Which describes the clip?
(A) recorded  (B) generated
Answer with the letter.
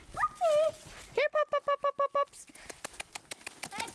A